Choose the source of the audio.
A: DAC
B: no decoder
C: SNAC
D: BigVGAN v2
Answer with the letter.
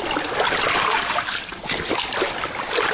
B